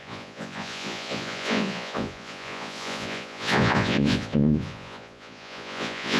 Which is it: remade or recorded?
remade